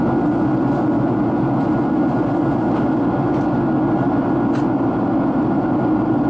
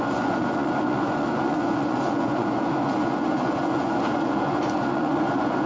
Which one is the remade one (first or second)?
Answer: second